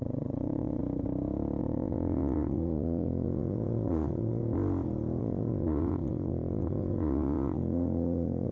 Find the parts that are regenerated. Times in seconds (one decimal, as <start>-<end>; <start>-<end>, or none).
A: 0.0-0.8; 1.6-4.4; 5.2-8.5